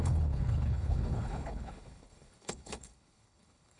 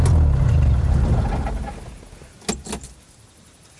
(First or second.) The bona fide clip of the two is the second